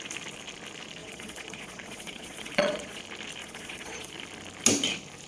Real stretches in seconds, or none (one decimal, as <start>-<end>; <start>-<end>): 0.0-1.0; 3.0-3.4; 4.1-5.3